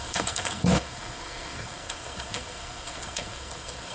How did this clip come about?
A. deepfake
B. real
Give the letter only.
A